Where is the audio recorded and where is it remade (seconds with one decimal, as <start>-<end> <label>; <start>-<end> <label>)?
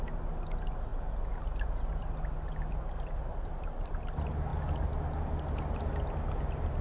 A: 0.0-6.8 recorded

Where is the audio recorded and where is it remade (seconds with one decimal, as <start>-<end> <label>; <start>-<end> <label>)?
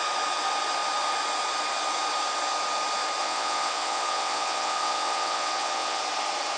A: 0.0-3.2 recorded; 3.2-6.0 remade; 6.0-6.6 recorded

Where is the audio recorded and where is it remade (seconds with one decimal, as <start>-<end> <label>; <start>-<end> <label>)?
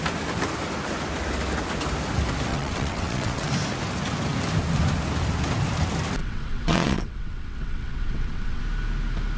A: 0.0-2.5 recorded; 2.5-3.5 remade; 3.5-6.2 recorded; 6.2-8.6 remade; 8.6-9.4 recorded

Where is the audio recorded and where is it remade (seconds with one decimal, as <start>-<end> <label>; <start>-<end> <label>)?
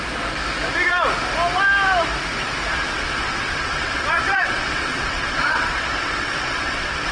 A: 0.0-2.7 recorded; 2.7-7.1 remade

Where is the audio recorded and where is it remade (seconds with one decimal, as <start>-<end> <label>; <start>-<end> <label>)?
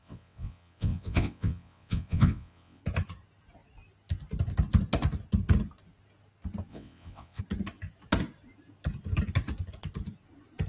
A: 0.0-2.8 remade; 2.8-6.7 recorded; 6.7-7.4 remade; 7.4-10.7 recorded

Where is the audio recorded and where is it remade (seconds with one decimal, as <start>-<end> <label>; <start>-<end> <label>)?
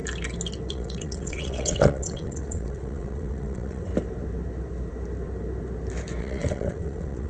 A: 0.0-0.7 recorded; 0.7-3.9 remade; 3.9-6.2 recorded; 6.2-7.3 remade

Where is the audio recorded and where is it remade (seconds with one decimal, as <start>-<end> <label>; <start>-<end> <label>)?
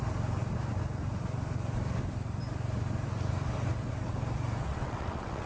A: 0.0-4.7 recorded; 4.7-5.5 remade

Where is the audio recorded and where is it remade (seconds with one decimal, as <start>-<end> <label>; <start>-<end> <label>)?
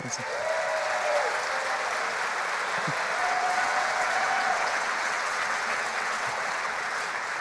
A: 0.0-3.2 recorded; 3.2-7.0 remade; 7.0-7.4 recorded